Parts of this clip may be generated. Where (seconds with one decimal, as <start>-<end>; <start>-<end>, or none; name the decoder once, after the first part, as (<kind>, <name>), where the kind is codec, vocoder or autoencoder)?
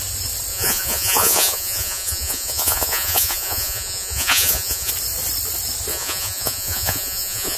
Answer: 0.5-4.9 (vocoder, Vocos); 5.9-7.6